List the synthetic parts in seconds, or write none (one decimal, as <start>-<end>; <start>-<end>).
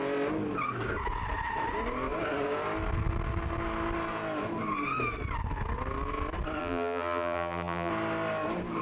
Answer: 6.6-7.9